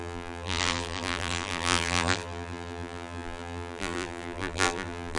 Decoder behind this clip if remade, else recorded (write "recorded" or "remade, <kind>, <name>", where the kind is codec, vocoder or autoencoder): remade, vocoder, BigVGAN v2